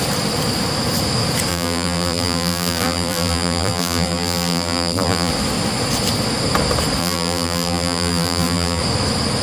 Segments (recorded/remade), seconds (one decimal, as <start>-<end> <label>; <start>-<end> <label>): 0.0-1.5 recorded; 1.5-5.3 remade; 5.3-7.0 recorded; 7.0-8.8 remade; 8.8-9.4 recorded